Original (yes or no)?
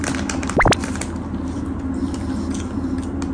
yes